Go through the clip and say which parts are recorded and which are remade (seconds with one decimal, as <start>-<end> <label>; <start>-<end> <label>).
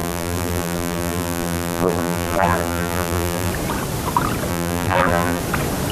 0.0-3.5 remade; 3.5-4.5 recorded; 4.5-5.4 remade; 5.4-5.9 recorded